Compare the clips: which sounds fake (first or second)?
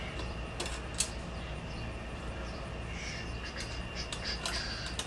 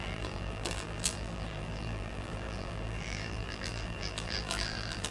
second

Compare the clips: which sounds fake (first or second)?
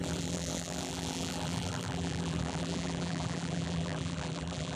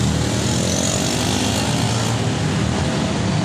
first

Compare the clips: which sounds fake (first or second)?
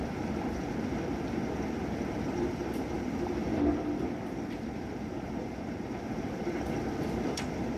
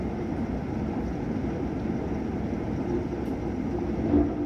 first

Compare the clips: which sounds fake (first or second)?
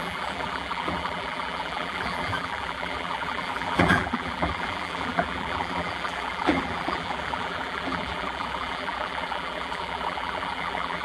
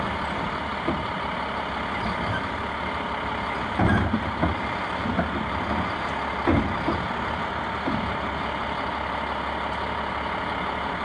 first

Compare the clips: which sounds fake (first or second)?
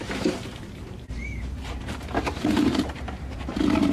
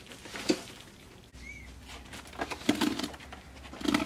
first